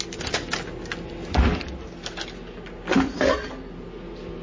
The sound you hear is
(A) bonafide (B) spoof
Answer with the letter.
A